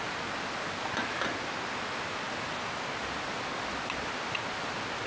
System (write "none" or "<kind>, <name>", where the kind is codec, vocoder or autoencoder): none